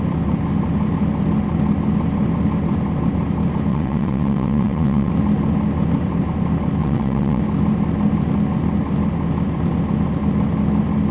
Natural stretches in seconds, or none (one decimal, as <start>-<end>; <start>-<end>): 0.0-3.7; 5.1-6.8; 7.4-11.1

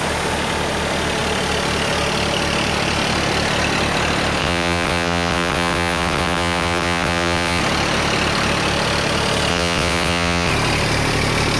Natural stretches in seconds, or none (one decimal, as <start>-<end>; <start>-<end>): 0.0-4.4; 7.6-9.5; 10.5-11.6

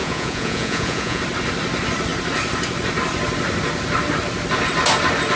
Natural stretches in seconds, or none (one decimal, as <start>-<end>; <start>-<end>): 1.2-5.4

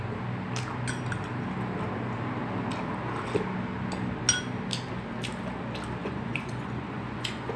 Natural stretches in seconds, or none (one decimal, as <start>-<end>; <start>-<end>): 0.0-6.0